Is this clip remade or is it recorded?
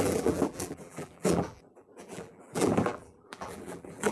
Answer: remade